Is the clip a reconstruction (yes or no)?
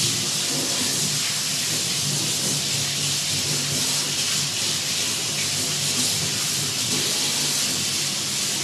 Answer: no